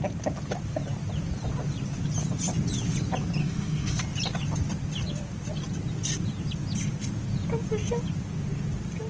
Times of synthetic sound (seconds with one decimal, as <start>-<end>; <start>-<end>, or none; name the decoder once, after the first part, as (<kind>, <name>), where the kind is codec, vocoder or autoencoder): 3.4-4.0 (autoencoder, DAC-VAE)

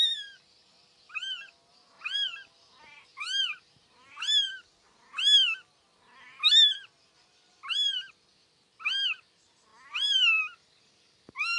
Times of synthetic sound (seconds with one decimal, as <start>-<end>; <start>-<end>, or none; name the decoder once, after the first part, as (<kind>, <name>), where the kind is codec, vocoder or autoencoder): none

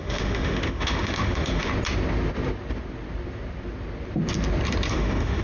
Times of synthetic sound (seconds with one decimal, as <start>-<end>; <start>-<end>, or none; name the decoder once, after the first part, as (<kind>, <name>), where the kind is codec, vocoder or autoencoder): 0.0-1.7 (autoencoder, DAC-VAE); 4.9-5.4